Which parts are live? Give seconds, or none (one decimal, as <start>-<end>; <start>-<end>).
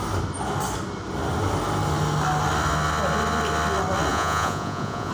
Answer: 0.0-4.1